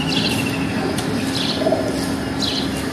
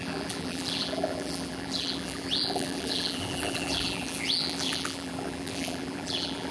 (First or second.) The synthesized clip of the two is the second